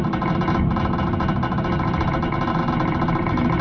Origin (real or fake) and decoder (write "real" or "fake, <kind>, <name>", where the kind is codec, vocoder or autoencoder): fake, vocoder, BigVGAN v2